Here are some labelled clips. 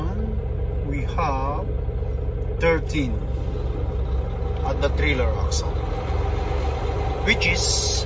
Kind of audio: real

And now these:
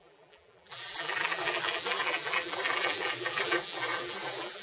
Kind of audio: fake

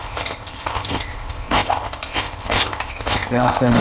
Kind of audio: fake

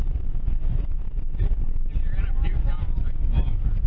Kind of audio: real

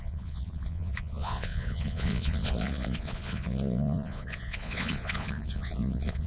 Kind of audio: fake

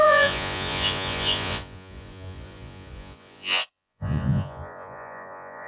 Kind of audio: fake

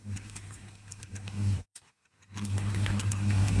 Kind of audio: fake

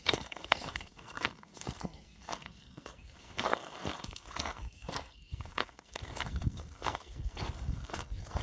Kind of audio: fake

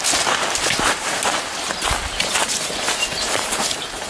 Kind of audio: fake